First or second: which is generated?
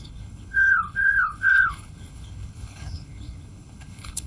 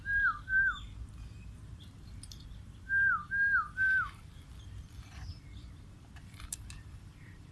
first